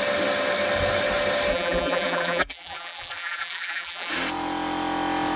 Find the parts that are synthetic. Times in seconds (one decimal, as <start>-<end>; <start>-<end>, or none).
1.5-4.1